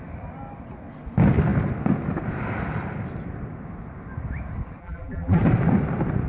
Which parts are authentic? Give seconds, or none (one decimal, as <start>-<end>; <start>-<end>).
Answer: 0.0-4.8; 5.4-6.3